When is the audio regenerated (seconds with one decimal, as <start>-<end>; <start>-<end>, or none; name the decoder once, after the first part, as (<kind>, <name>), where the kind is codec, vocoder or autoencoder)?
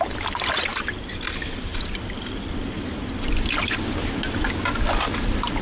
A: none